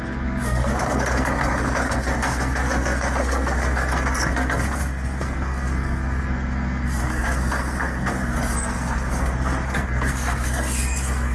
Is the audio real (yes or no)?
no